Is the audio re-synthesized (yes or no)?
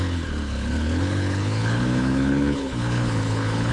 yes